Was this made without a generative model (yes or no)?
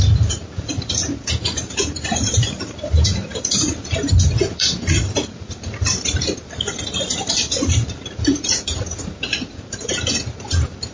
no